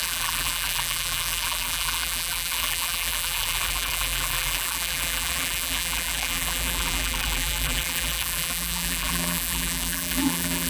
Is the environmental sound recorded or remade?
remade